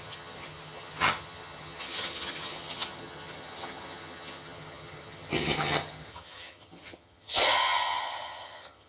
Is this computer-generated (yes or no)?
yes